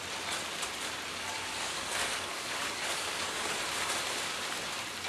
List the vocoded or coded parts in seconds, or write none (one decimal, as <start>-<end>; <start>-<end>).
1.1-3.6